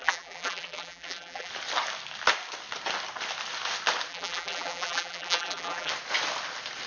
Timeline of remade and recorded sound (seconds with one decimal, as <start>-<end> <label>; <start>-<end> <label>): 0.0-1.5 remade; 1.5-4.1 recorded; 4.1-5.9 remade; 5.9-6.9 recorded